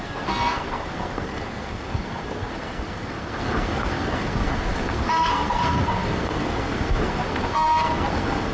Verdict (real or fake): fake